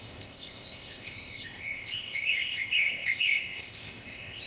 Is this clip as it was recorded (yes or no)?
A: no